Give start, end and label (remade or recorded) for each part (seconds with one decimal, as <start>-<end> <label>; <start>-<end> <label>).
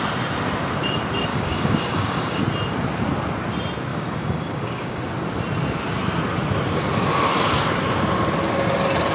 0.0-1.3 recorded; 1.3-2.4 remade; 2.4-3.9 recorded; 3.9-5.0 remade; 5.0-9.1 recorded